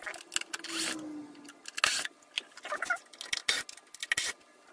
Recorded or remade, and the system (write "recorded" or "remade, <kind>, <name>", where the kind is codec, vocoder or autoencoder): recorded